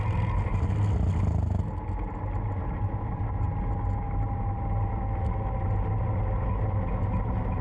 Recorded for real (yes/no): yes